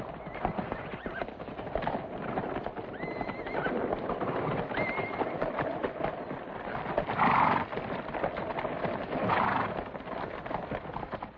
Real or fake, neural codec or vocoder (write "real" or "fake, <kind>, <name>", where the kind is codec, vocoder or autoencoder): real